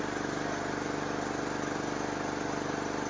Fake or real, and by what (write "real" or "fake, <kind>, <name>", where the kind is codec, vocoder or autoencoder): real